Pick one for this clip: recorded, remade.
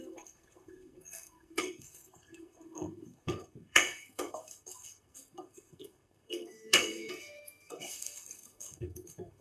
remade